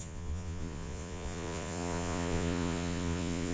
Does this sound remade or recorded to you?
remade